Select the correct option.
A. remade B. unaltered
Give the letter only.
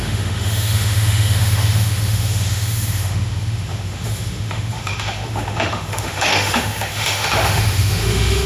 A